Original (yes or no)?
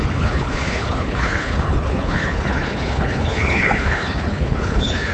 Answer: no